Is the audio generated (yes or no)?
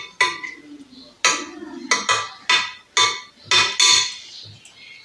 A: no